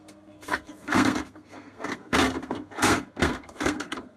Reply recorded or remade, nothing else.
remade